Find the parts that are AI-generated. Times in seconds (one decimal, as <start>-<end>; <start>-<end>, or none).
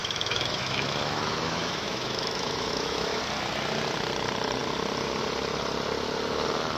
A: 0.0-3.2